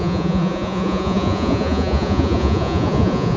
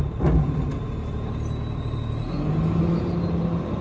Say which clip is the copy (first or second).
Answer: first